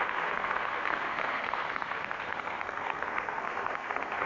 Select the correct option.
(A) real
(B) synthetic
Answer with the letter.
B